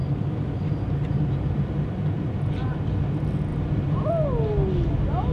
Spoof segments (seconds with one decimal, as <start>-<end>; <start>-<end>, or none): 0.0-2.3; 3.5-4.1